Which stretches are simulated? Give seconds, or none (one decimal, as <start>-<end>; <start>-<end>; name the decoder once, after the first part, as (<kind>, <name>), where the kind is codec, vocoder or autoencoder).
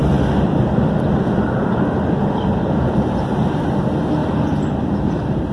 none